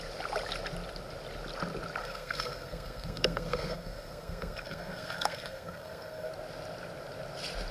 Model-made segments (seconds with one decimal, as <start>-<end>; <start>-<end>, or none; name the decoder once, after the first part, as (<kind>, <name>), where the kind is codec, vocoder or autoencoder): 2.0-6.3 (codec, SNAC)